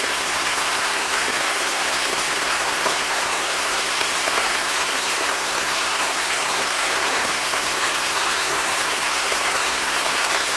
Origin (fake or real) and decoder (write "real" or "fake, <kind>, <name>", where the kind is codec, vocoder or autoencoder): fake, codec, SNAC